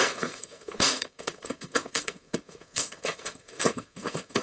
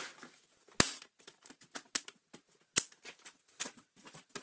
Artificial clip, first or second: first